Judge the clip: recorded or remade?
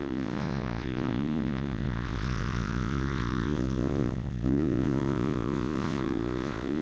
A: remade